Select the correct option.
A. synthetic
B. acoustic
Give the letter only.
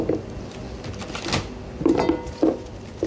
B